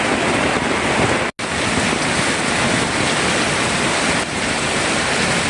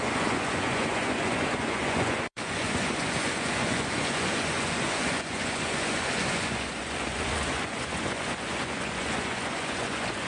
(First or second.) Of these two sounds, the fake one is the second